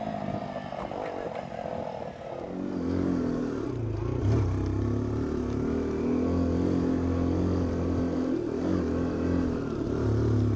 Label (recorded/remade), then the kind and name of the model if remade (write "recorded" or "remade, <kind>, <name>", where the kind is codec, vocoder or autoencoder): recorded